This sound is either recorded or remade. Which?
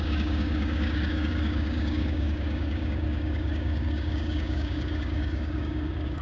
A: remade